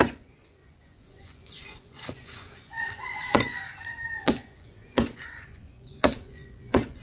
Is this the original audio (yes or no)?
no